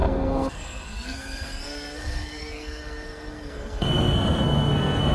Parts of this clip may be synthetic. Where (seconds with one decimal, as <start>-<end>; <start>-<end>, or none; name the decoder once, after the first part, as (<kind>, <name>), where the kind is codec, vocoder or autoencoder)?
0.0-5.1 (codec, SNAC)